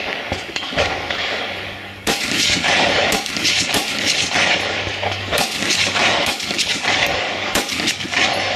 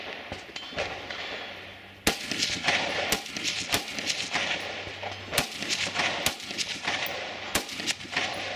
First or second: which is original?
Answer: second